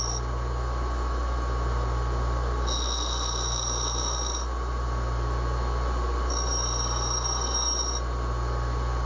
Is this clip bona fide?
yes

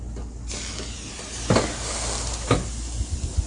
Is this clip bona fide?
yes